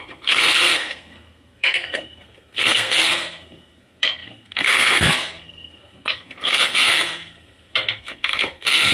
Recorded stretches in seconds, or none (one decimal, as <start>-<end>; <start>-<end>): none